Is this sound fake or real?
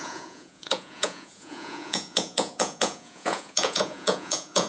fake